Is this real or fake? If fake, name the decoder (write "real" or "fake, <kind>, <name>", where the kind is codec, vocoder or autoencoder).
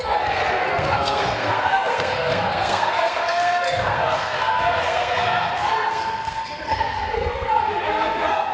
fake, codec, SNAC